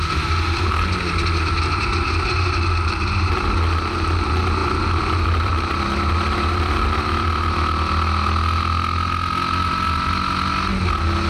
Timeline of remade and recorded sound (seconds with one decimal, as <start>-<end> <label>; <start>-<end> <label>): 0.0-11.3 recorded